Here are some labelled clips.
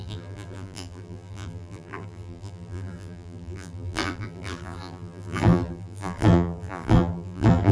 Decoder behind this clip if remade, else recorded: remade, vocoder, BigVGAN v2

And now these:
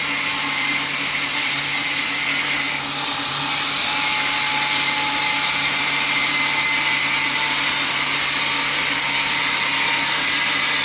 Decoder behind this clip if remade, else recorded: recorded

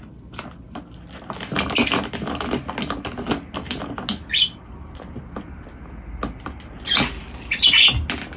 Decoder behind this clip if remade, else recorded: recorded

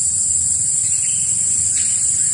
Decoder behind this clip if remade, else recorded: remade, vocoder, BigVGAN v2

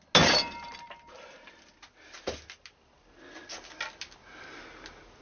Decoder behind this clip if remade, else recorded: recorded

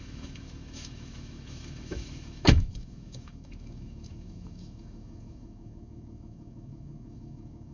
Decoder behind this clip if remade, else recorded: remade, autoencoder, DAC-VAE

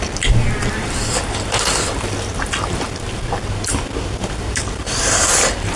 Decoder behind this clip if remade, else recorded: recorded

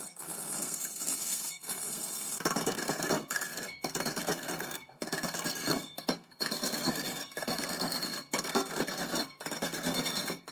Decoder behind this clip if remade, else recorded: remade, codec, SNAC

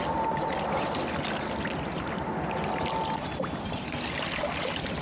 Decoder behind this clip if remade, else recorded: recorded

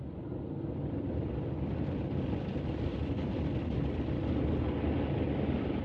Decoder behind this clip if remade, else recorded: recorded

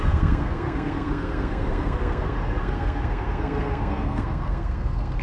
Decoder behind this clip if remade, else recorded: remade, codec, SNAC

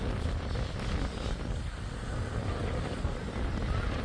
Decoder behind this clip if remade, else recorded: recorded